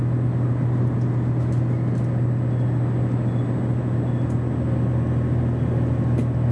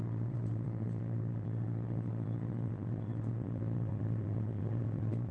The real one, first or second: first